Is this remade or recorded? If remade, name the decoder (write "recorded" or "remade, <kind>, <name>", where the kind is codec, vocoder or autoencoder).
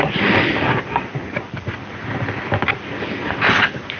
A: recorded